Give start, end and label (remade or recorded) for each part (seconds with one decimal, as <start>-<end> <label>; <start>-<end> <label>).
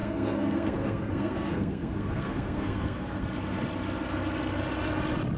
0.0-3.2 remade; 3.2-5.4 recorded